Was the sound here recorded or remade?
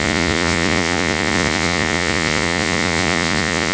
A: remade